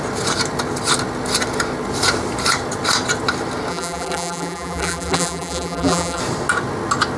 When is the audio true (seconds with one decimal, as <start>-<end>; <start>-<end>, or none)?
0.0-3.7; 6.2-7.2